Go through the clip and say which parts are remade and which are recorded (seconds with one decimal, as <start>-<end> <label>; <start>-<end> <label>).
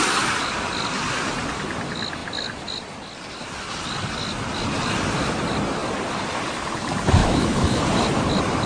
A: 0.0-7.2 recorded; 7.2-7.8 remade; 7.8-8.7 recorded